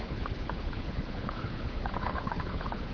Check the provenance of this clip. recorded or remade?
remade